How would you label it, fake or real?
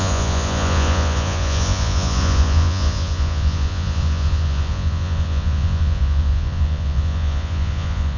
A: fake